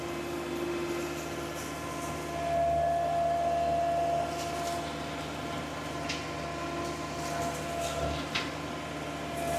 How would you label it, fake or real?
real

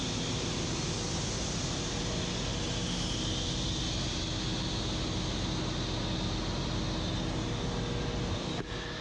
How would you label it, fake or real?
real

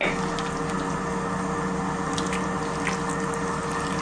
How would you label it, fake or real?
real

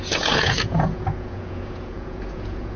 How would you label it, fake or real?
fake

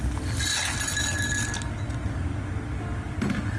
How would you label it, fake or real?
real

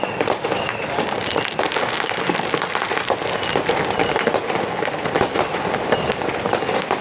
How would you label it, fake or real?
real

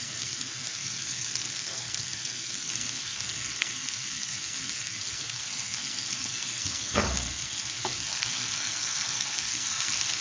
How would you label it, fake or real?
fake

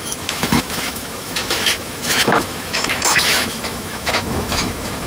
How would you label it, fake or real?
fake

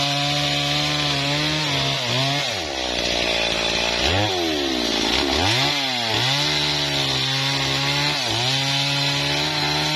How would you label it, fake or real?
real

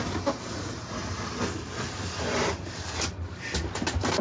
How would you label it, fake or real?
real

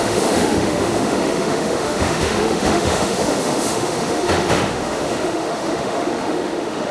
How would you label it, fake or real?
fake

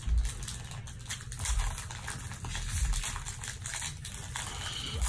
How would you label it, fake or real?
real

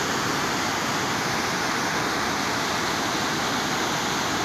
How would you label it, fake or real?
real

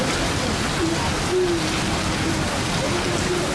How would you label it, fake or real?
real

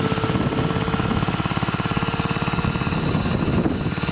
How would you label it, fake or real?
real